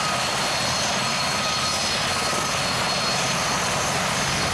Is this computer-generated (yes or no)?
no